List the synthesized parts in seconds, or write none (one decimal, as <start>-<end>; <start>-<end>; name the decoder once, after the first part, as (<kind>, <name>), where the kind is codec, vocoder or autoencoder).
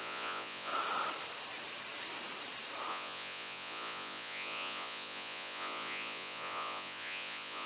0.0-0.7 (vocoder, Vocos); 2.9-7.7